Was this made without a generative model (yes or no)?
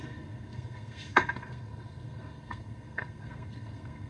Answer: no